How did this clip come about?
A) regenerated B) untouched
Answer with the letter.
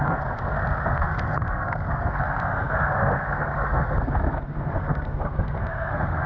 A